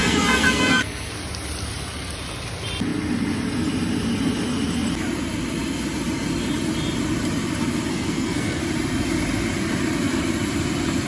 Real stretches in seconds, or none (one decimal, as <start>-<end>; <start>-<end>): 1.1-7.9; 8.6-11.1